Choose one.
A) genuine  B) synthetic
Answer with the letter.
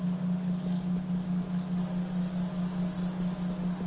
A